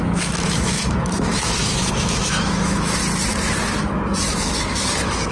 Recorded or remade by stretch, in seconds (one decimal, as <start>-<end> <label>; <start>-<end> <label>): 0.0-3.0 remade; 3.0-3.6 recorded; 3.6-5.3 remade